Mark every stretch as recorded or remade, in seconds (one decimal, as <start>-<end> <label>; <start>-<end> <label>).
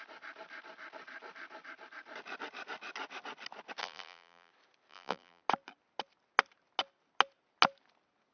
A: 0.0-3.8 recorded; 3.8-4.5 remade; 4.5-4.9 recorded; 4.9-5.4 remade; 5.4-8.3 recorded